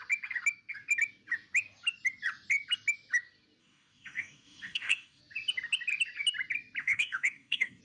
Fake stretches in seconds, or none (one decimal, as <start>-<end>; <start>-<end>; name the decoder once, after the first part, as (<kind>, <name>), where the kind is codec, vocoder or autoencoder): 3.6-5.2 (codec, DAC); 6.8-7.8